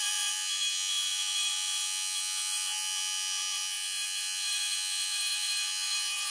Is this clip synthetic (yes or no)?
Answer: yes